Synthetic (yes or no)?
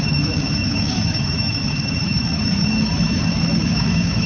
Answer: yes